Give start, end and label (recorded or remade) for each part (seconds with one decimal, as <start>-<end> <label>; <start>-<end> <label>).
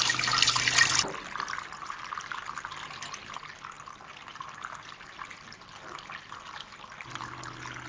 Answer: 0.0-7.9 recorded